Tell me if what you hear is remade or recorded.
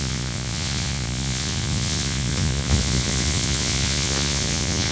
remade